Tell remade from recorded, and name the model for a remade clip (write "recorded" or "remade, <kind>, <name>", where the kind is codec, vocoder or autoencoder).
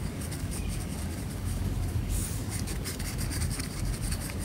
remade, codec, DAC